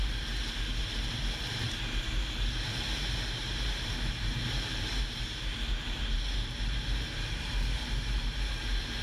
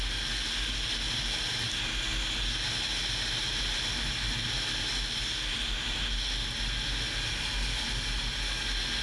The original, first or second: second